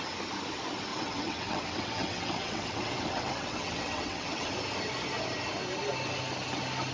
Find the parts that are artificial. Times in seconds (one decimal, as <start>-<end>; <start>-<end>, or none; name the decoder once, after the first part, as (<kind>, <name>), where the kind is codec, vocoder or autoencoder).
0.9-4.5 (vocoder, WaveNeXt)